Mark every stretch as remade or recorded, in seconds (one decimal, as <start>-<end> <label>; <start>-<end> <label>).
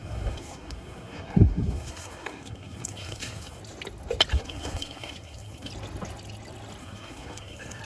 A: 0.0-3.6 remade; 3.6-4.3 recorded; 4.3-5.7 remade; 5.7-6.8 recorded; 6.8-7.8 remade